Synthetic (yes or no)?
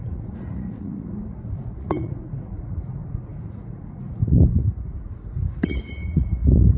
yes